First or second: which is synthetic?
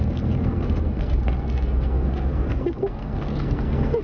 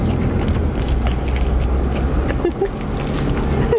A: first